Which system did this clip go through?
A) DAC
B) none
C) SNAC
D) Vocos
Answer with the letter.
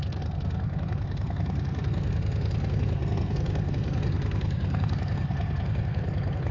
C